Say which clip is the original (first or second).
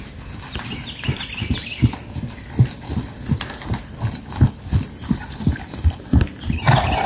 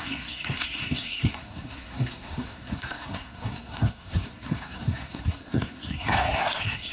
first